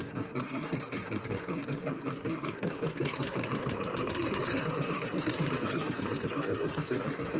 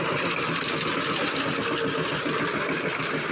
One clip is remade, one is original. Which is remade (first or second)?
first